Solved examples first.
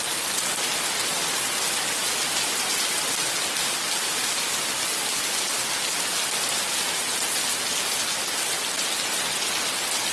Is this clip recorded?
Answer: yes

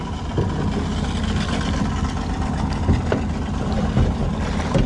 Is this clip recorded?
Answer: yes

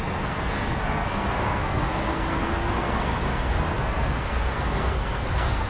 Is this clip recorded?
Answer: no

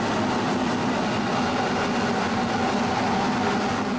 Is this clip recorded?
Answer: yes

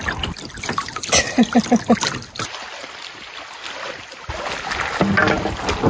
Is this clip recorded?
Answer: yes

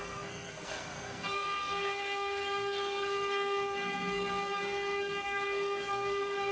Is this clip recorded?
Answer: no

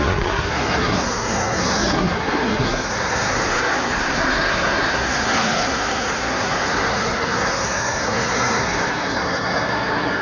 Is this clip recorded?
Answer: no